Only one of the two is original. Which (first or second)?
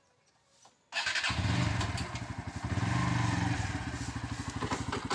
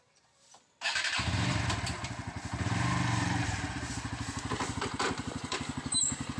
first